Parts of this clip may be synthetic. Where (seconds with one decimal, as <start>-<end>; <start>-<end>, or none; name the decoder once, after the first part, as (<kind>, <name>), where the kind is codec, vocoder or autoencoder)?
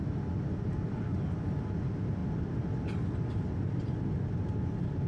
none